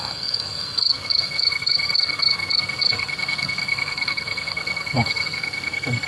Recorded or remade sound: remade